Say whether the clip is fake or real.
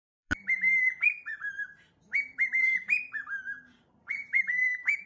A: fake